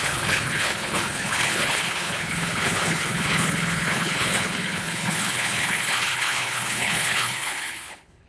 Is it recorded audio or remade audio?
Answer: remade